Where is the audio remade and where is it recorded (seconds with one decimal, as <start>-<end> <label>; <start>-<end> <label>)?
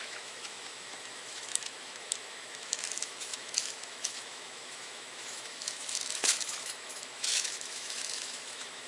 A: 0.0-8.9 remade